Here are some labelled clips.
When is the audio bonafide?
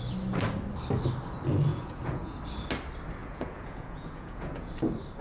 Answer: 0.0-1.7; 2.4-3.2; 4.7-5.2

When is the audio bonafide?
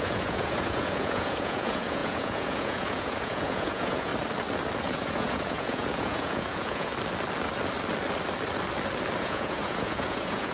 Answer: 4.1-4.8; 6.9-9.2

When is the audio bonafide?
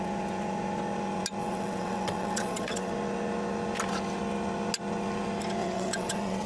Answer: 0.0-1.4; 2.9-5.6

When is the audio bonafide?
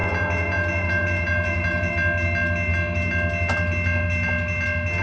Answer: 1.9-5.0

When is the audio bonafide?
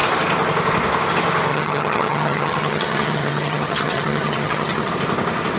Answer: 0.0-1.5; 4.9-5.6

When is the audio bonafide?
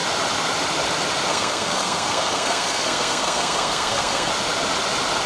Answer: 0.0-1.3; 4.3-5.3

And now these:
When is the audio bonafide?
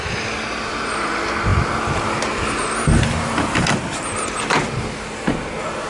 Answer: 0.0-5.9